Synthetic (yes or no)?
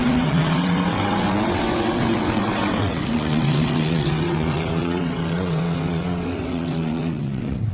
yes